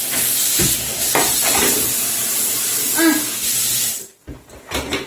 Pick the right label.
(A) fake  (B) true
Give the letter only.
B